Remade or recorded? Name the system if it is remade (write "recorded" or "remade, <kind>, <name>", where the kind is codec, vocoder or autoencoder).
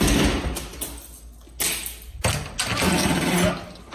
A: recorded